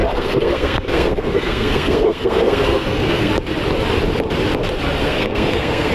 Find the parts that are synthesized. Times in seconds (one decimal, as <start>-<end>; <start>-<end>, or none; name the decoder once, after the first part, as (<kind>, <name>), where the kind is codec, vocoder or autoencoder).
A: 0.0-3.3 (codec, SNAC); 5.0-5.9